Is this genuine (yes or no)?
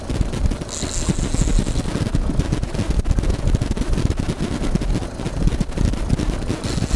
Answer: yes